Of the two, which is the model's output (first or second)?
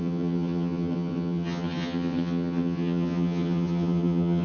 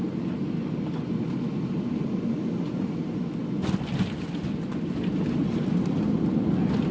first